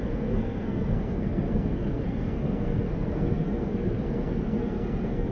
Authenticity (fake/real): fake